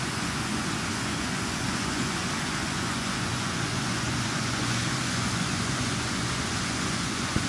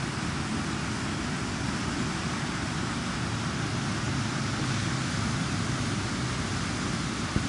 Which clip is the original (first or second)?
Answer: second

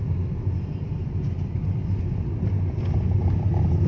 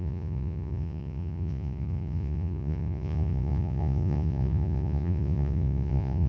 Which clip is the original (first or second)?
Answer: first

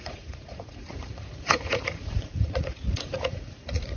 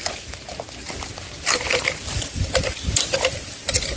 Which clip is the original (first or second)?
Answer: second